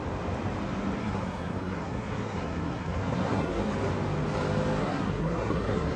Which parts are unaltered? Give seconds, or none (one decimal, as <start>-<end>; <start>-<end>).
0.0-1.0; 3.7-4.8